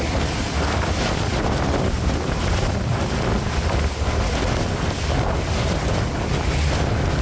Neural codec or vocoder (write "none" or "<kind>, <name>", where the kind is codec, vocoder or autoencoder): none